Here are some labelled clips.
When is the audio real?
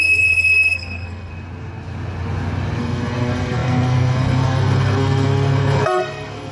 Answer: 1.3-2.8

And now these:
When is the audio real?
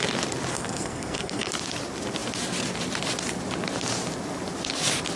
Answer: 0.0-0.5; 1.5-5.2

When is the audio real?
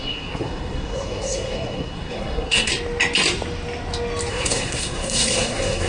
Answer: 2.7-4.3